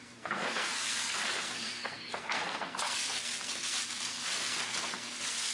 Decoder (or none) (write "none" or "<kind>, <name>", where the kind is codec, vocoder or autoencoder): codec, SNAC